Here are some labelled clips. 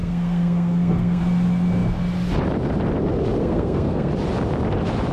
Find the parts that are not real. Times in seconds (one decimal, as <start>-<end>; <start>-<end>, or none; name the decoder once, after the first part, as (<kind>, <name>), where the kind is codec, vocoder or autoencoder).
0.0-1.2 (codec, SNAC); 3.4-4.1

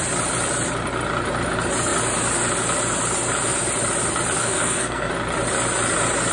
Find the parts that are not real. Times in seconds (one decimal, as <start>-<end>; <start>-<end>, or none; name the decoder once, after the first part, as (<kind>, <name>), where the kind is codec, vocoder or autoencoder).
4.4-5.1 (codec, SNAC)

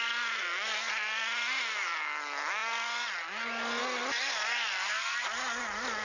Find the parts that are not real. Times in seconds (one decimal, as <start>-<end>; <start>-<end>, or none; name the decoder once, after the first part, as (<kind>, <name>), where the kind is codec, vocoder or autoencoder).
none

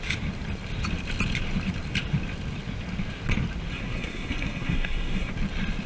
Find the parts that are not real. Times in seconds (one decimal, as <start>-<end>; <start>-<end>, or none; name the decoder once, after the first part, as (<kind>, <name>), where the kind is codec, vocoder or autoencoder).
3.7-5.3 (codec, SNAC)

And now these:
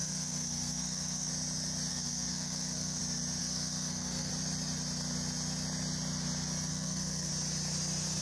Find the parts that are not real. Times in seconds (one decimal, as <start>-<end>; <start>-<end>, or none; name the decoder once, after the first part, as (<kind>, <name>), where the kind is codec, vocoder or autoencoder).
0.0-1.3 (codec, SNAC); 1.9-3.0; 3.4-4.3; 6.7-7.3

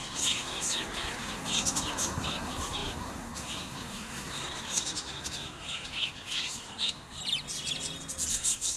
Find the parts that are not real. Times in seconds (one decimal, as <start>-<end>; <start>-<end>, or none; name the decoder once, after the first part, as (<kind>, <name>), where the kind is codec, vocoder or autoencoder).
0.0-7.2 (codec, SNAC); 8.3-8.8

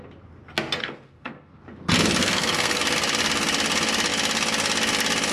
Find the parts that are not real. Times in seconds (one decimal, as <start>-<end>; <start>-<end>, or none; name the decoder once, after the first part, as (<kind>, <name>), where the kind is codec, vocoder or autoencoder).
0.8-1.6 (codec, SNAC); 2.2-2.8

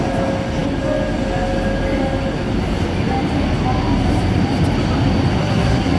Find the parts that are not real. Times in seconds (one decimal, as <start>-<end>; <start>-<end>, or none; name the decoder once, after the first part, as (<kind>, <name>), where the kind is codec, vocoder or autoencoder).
5.4-6.0 (codec, SNAC)